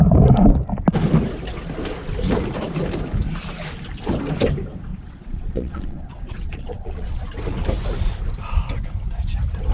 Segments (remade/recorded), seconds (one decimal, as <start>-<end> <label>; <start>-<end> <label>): 0.0-4.9 recorded; 4.9-7.2 remade; 7.2-9.7 recorded